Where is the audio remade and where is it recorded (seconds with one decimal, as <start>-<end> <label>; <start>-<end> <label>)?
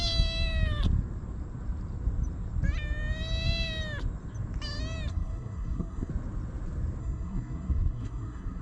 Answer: 0.0-5.1 recorded; 5.1-6.1 remade; 6.1-7.0 recorded; 7.0-8.6 remade